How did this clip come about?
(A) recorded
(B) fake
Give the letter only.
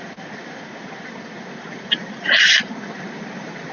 A